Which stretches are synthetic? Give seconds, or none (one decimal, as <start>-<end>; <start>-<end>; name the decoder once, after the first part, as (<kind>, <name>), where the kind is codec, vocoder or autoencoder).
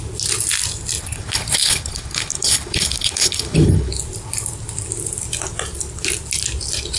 1.0-3.9 (codec, HILCodec)